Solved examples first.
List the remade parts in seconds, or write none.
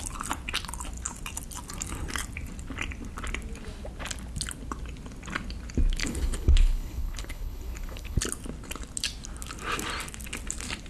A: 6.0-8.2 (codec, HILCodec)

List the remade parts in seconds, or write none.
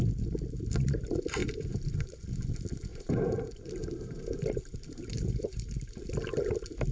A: 1.4-2.5 (vocoder, BigVGAN v2); 2.9-6.0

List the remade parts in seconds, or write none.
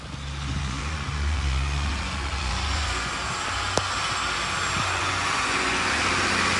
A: 0.6-3.1 (vocoder, Vocos); 5.0-6.0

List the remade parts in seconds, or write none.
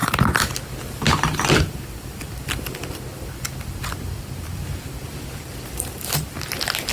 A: 0.0-0.6 (vocoder, BigVGAN v2); 1.1-2.4; 3.1-5.7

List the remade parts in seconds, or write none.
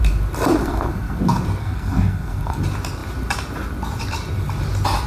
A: 0.6-1.2 (codec, SNAC); 1.6-2.6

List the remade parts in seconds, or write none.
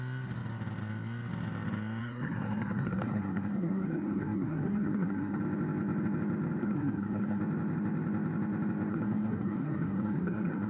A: 2.0-5.4 (codec, SNAC); 6.6-7.4; 8.9-10.7